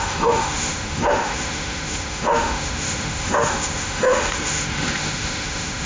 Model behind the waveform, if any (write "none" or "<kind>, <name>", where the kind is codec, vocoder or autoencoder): autoencoder, DAC-VAE